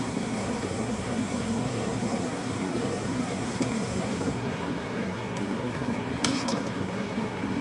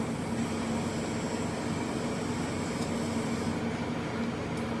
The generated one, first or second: first